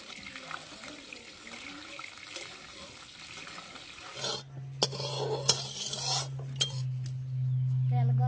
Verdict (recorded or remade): recorded